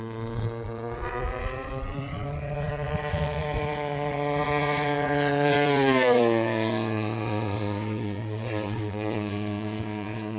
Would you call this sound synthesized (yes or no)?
yes